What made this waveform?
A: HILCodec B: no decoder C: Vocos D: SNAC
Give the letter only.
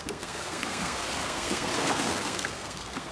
D